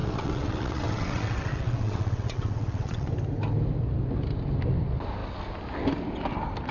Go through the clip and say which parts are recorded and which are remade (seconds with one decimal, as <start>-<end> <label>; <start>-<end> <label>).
0.0-3.1 remade; 3.1-6.7 recorded